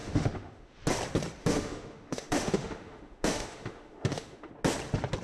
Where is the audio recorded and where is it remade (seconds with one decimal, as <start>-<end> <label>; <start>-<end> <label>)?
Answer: 0.0-0.8 remade; 0.8-1.4 recorded; 1.4-4.5 remade; 4.5-5.2 recorded